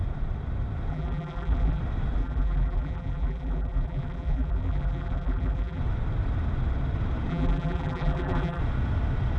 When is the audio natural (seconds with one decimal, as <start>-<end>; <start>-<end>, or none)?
0.0-0.9; 1.8-2.2; 5.8-7.3; 8.6-9.4